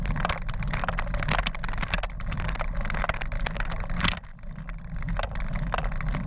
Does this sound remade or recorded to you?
recorded